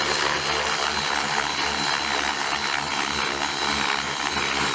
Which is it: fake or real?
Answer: real